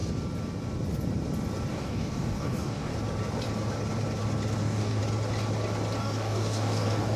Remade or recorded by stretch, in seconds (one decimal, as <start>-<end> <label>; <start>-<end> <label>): 0.0-1.7 recorded; 1.7-2.9 remade; 2.9-4.6 recorded; 4.6-5.0 remade; 5.0-6.0 recorded; 6.0-7.2 remade